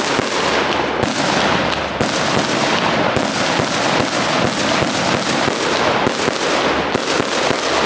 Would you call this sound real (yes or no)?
yes